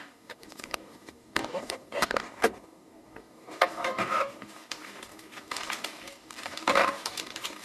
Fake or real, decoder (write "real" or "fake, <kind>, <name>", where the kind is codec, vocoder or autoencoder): fake, codec, DAC